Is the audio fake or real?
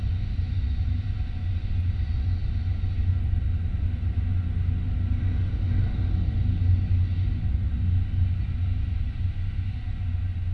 real